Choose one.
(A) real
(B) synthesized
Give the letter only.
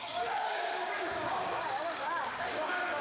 B